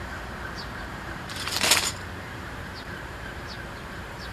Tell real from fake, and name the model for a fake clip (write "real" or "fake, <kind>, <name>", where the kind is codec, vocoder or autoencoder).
fake, vocoder, BigVGAN v2